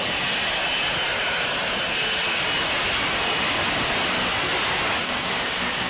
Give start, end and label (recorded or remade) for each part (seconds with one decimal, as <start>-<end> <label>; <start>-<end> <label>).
0.0-5.0 recorded; 5.0-5.9 remade